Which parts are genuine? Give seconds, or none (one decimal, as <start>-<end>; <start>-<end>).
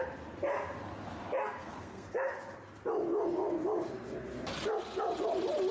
0.0-1.4; 2.3-5.7